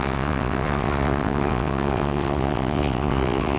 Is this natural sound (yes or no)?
no